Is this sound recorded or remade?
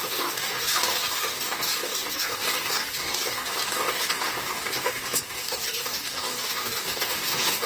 remade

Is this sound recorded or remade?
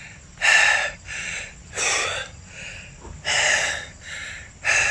recorded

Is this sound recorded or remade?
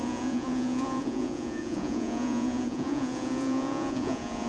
remade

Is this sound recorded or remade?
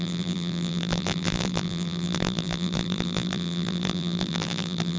remade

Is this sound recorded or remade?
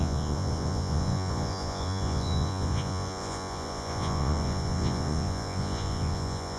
remade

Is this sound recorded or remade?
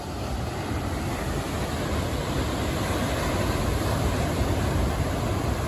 recorded